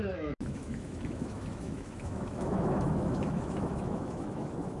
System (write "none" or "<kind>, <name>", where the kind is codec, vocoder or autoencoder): autoencoder, DAC-VAE